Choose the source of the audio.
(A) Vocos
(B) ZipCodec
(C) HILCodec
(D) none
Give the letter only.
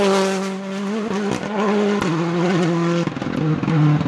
D